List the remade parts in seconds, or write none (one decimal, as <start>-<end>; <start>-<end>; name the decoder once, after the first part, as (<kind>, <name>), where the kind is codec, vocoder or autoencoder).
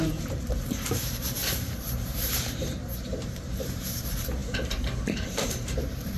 0.0-6.2 (vocoder, BigVGAN v2)